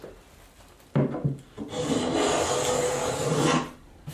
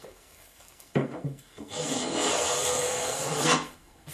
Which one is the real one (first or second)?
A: first